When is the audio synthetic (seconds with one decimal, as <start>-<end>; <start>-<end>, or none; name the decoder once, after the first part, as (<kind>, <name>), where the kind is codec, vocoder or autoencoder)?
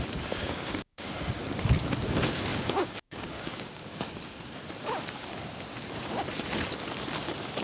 0.4-1.1 (codec, DAC); 2.5-4.1